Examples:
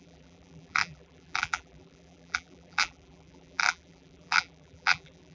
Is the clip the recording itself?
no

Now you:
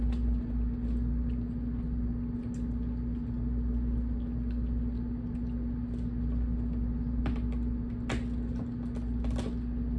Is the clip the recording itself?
yes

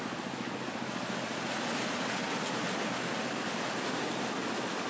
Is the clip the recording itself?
yes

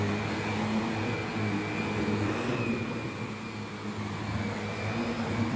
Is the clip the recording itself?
yes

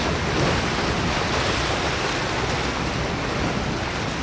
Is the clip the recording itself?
yes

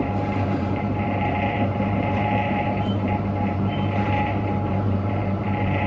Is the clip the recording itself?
no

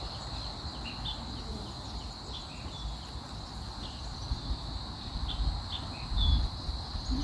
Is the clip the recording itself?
yes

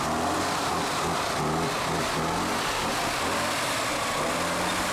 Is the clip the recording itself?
yes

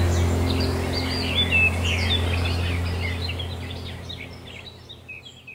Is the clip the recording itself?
yes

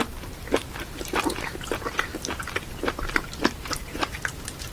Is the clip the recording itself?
no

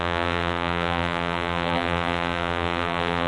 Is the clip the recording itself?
no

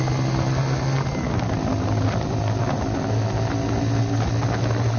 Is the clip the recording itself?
yes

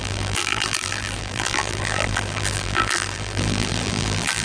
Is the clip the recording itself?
no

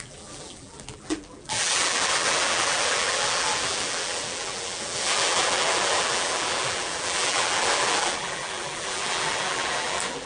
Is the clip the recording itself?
no